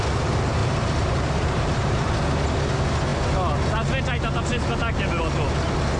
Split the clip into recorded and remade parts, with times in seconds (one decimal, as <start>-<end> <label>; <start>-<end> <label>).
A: 0.0-0.6 recorded; 0.6-2.1 remade; 2.1-6.0 recorded